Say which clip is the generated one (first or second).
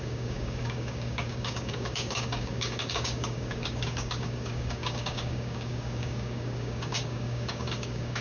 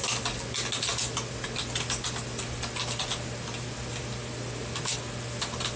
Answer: first